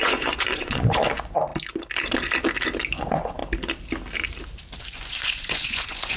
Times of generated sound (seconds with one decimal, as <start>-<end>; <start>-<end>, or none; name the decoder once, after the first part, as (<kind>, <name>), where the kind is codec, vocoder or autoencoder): 0.0-1.5 (vocoder, Vocos); 3.0-3.4; 4.8-6.2

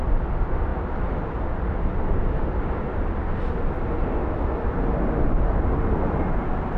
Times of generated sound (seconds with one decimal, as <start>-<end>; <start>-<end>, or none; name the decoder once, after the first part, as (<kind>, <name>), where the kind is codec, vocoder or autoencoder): none

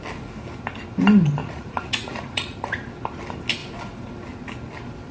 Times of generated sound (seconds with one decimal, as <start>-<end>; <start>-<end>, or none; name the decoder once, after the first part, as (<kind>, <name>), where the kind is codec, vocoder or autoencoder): 1.4-2.6 (vocoder, Vocos)

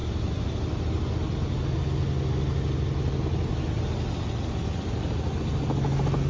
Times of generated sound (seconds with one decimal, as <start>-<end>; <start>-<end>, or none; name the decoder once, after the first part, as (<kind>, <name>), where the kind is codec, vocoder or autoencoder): none

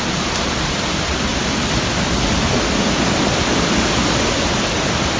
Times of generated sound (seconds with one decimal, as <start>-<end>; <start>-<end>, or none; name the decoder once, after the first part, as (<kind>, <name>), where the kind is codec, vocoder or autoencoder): none

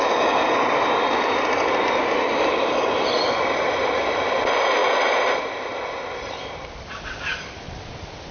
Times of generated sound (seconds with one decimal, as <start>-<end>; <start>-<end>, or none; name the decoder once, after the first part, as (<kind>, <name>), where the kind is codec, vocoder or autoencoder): none

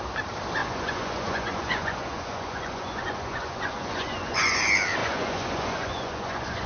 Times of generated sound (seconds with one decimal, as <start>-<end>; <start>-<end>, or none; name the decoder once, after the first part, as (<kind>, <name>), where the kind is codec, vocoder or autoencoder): 0.6-4.6 (vocoder, Vocos); 5.0-6.7

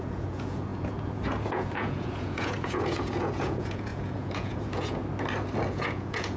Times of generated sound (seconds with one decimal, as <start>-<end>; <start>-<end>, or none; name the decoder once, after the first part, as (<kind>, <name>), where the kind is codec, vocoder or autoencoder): 0.0-5.0 (vocoder, Vocos); 5.7-6.4